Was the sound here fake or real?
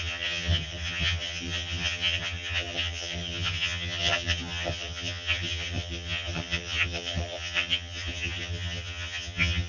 fake